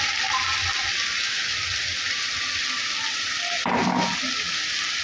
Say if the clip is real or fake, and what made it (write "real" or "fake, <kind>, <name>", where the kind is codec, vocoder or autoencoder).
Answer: real